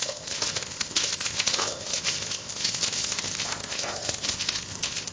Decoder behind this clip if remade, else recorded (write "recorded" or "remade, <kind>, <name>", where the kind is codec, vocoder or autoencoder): remade, codec, ZipCodec